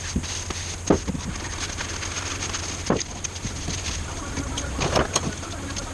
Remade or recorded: recorded